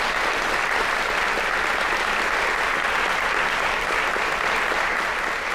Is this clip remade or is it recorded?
recorded